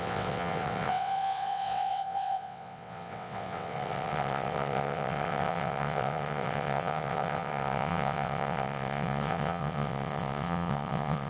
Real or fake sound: fake